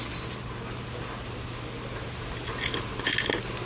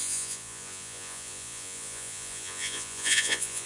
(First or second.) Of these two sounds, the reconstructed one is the second